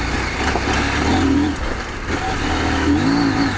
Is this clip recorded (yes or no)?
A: yes